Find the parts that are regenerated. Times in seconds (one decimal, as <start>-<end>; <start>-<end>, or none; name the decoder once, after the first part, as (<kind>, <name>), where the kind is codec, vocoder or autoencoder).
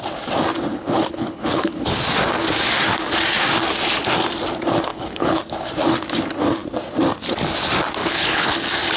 0.7-2.0 (codec, HILCodec); 4.9-5.4; 8.0-8.5